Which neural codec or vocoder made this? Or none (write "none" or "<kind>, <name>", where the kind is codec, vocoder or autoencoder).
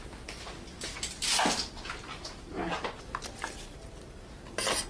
none